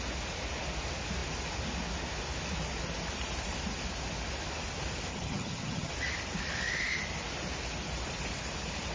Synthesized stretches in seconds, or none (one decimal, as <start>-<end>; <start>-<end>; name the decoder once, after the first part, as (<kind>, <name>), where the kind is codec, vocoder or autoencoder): 5.1-5.9 (vocoder, HiFi-GAN)